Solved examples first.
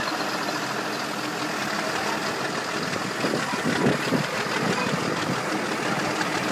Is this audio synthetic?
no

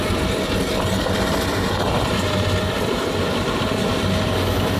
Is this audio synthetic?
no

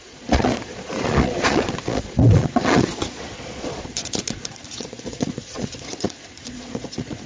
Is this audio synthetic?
yes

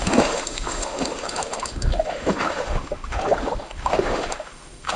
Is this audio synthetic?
yes